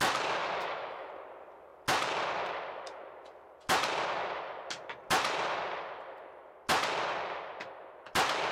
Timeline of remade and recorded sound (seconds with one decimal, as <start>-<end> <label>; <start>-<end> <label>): 0.0-0.4 recorded; 0.4-1.1 remade; 1.1-8.5 recorded